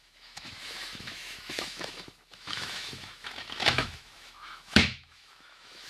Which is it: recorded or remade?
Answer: remade